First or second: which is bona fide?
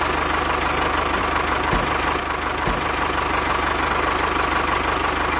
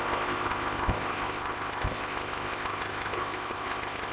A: first